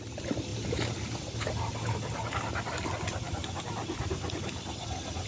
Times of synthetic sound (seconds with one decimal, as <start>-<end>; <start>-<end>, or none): none